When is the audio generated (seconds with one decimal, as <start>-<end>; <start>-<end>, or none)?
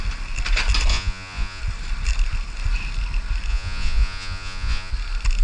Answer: 0.9-1.6; 3.5-4.9